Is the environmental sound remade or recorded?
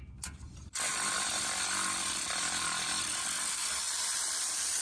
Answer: remade